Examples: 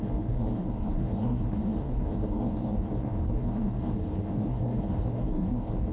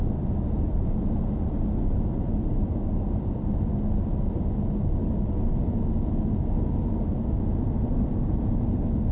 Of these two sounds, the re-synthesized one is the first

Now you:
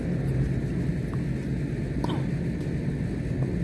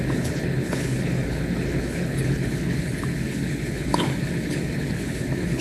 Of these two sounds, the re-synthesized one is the second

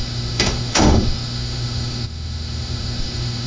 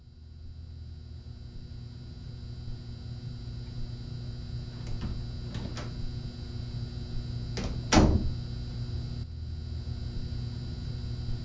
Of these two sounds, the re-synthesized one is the first